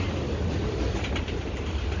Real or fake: real